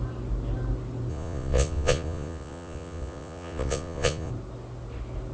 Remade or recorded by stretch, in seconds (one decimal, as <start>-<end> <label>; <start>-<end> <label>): 0.0-1.1 recorded; 1.1-4.3 remade; 4.3-5.3 recorded